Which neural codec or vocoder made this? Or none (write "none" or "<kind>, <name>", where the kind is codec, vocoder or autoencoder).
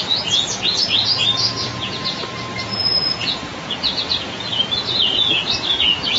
vocoder, Vocos